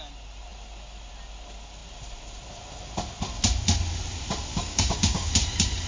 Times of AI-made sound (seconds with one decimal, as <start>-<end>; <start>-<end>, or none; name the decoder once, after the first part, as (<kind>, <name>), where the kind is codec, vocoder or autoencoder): 4.5-5.3 (codec, DAC)